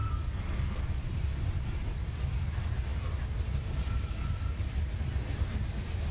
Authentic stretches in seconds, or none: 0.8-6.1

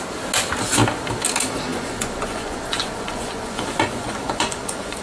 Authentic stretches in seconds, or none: 0.0-1.7

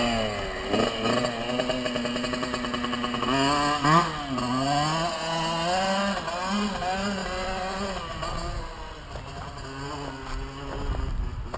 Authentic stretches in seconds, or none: 0.0-11.6

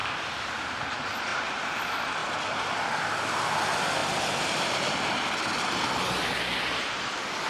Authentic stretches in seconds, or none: 0.5-1.3; 1.8-7.5

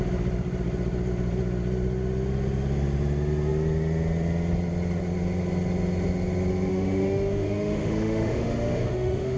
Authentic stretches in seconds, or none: 0.0-6.7